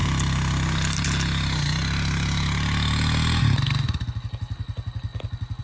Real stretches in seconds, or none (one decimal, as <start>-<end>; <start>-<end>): 0.0-5.6